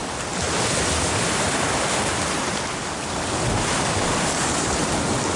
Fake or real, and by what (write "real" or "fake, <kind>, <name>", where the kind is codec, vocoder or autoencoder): real